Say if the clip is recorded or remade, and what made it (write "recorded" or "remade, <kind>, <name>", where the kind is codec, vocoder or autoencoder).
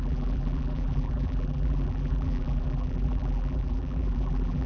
remade, vocoder, BigVGAN v2